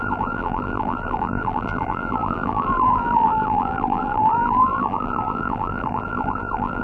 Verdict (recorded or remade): remade